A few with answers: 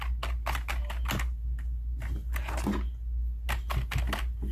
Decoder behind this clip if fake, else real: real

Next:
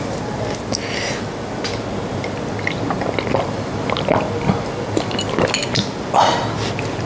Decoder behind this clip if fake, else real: real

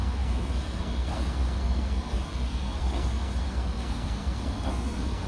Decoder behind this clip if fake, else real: fake, codec, SNAC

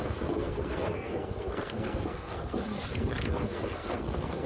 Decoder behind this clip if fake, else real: fake, codec, SNAC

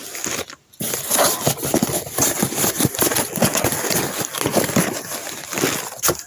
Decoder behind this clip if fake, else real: real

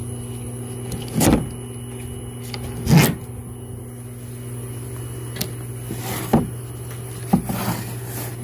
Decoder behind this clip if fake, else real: real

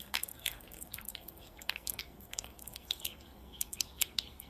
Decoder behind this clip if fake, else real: fake, codec, SNAC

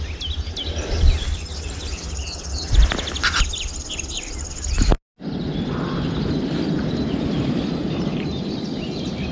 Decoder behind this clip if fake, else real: real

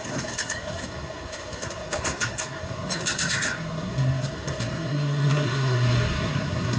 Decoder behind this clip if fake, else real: fake, codec, SNAC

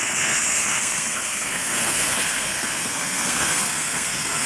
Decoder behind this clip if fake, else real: fake, codec, SNAC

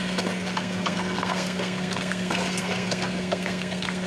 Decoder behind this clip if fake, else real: fake, codec, SNAC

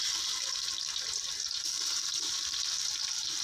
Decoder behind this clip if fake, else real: real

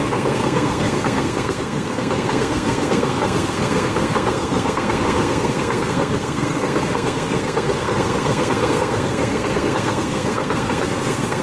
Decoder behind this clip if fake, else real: fake, codec, SNAC